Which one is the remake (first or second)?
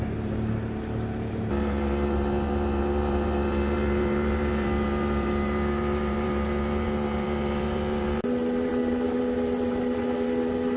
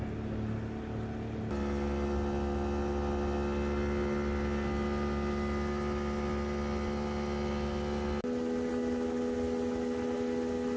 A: first